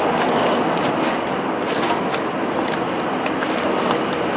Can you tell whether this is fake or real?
real